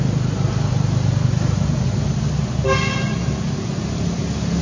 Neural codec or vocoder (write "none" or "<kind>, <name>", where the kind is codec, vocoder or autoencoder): none